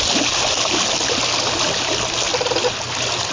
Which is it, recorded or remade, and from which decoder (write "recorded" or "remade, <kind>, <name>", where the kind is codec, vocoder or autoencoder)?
recorded